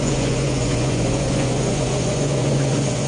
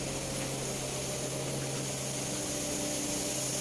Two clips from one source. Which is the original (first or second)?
second